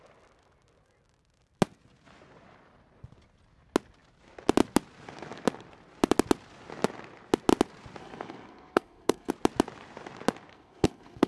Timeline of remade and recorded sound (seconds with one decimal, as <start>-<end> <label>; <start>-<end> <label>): 0.0-8.0 recorded; 8.0-9.3 remade; 9.3-10.5 recorded; 10.5-11.3 remade